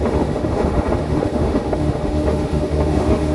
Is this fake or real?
fake